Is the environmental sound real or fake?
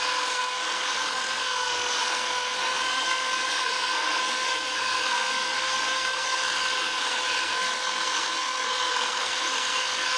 fake